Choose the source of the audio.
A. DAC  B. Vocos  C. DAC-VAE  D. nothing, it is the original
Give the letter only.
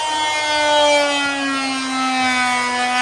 D